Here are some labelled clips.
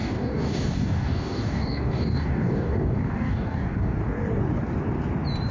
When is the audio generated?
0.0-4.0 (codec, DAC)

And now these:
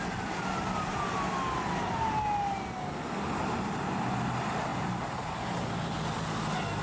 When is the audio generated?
none

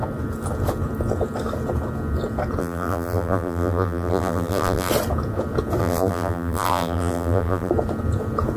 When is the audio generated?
2.6-4.9 (vocoder, BigVGAN v2); 5.8-7.7

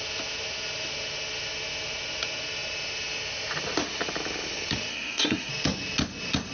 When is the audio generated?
4.9-5.5 (codec, SNAC)

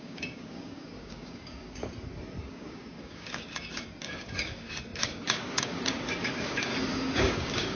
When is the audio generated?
0.0-1.8 (codec, DAC); 2.4-6.7; 7.2-7.8